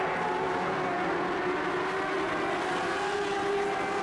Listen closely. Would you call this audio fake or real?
real